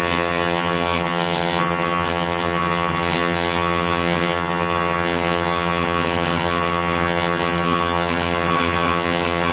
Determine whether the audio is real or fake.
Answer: fake